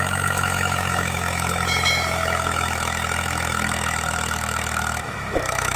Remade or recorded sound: remade